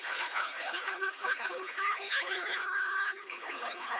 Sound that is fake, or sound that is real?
fake